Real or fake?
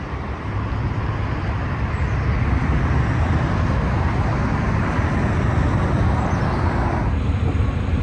real